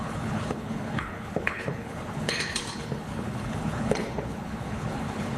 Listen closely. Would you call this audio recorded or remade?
remade